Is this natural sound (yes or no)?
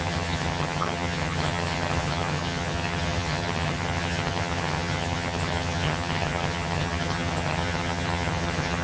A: no